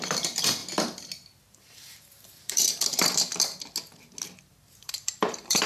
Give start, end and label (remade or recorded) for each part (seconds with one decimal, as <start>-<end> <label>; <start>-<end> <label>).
0.0-0.6 remade; 0.6-1.4 recorded; 1.4-3.3 remade; 3.3-4.5 recorded; 4.5-5.7 remade

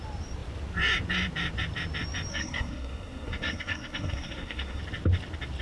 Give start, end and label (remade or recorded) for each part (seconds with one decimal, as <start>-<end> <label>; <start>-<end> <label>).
0.0-2.3 recorded; 2.3-4.8 remade; 4.8-5.6 recorded